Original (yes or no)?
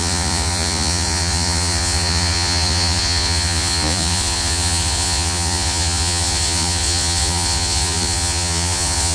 no